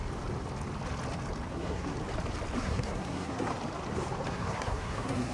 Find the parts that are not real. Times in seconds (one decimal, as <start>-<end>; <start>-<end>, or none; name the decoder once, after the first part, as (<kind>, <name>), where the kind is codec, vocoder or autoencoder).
1.5-1.9 (codec, SNAC); 2.6-3.5; 4.3-5.3